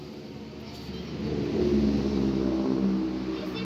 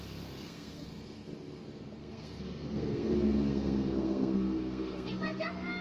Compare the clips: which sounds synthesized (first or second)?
second